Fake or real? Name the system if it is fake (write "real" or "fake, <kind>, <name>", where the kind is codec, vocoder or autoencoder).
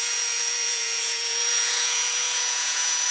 fake, vocoder, Vocos